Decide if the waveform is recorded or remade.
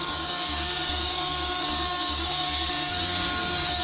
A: remade